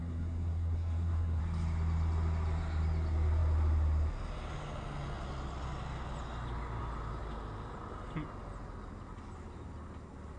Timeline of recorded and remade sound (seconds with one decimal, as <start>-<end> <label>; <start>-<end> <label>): 0.0-1.4 remade; 1.4-10.4 recorded